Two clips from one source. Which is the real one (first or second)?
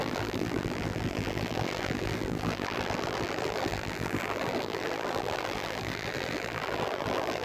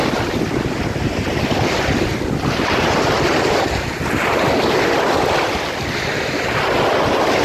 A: second